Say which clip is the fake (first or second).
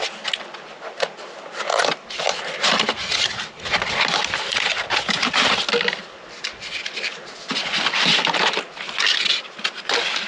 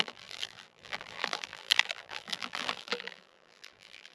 second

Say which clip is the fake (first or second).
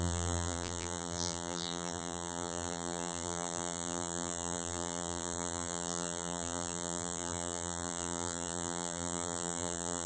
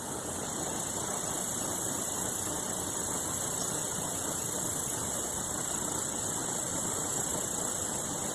first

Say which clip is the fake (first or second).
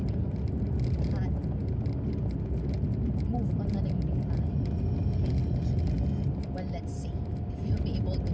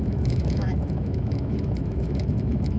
second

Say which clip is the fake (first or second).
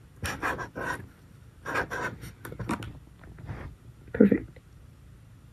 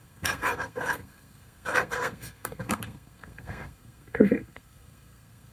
second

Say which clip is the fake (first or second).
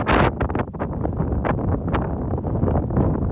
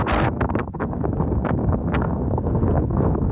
second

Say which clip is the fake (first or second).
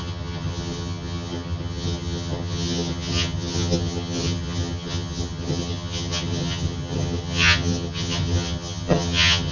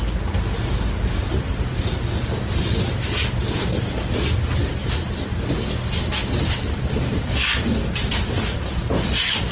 first